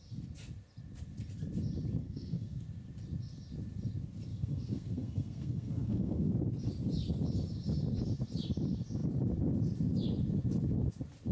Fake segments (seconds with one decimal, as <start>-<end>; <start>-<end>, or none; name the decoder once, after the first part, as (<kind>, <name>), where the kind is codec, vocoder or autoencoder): 2.0-2.6 (codec, SNAC); 4.3-6.3